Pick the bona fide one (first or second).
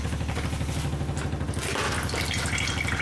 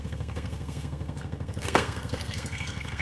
first